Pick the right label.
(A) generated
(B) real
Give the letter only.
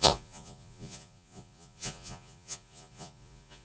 A